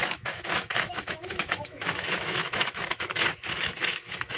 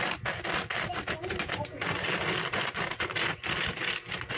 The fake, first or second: first